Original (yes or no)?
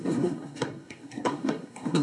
no